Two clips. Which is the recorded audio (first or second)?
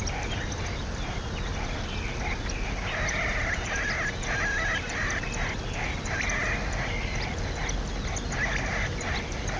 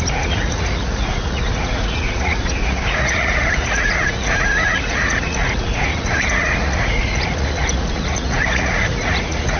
first